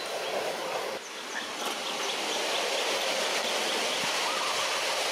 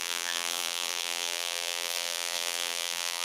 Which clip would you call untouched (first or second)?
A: first